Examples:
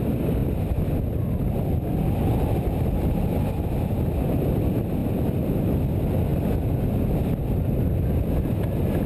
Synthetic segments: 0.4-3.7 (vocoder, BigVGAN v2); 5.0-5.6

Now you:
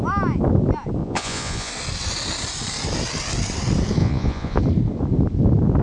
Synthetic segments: 1.0-1.7 (vocoder, Vocos); 4.0-4.6

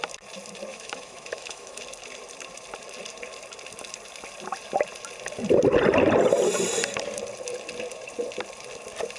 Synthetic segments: 0.7-1.8 (autoencoder, DAC-VAE)

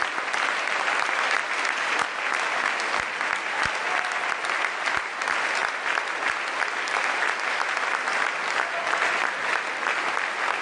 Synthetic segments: none

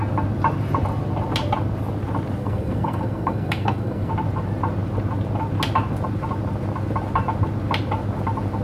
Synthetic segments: 2.4-4.1 (codec, SNAC)

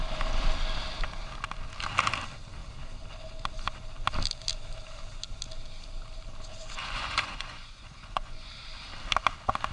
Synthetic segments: 6.8-8.5 (vocoder, Vocos)

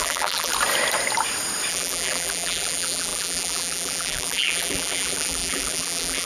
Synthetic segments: 0.0-0.5 (vocoder, BigVGAN v2); 1.7-6.3